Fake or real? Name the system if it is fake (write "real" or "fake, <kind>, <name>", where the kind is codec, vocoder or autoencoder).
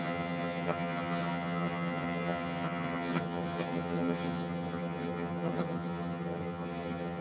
fake, vocoder, HiFi-GAN